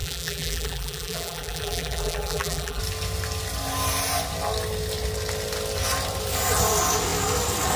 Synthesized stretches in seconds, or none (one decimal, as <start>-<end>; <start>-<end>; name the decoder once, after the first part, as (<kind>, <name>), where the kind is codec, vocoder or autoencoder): 0.0-2.8 (vocoder, BigVGAN v2)